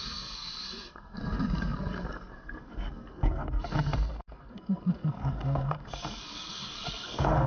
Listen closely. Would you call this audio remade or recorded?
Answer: remade